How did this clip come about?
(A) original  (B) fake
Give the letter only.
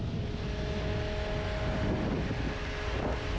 A